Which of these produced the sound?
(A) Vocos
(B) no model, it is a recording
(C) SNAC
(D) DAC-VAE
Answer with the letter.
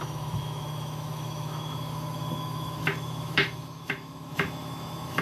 D